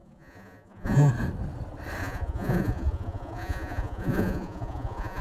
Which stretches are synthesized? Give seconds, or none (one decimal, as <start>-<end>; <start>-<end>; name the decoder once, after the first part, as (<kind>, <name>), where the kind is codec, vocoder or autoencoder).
0.0-1.1 (vocoder, Vocos); 2.0-5.2